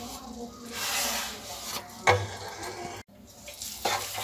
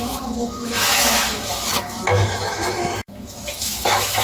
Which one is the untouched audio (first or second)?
first